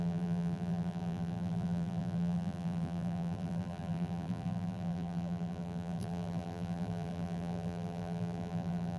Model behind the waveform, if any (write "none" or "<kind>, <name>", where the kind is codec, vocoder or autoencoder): vocoder, BigVGAN v2